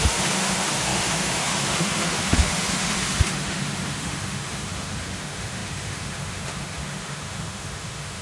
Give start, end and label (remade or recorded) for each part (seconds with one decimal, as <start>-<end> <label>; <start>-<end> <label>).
0.0-8.2 remade